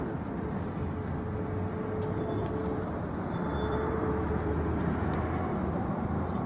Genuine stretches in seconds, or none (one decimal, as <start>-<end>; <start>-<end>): 0.0-2.6; 4.3-6.5